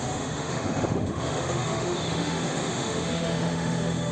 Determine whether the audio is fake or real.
fake